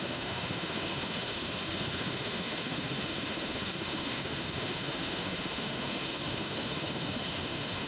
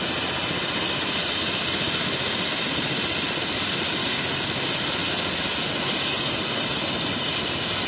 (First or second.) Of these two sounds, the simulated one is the first